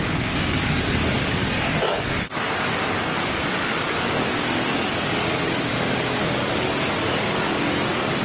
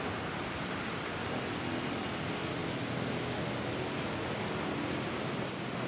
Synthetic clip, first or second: first